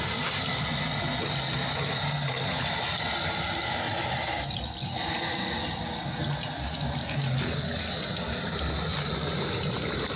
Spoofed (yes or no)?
no